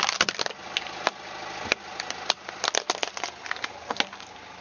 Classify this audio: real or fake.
real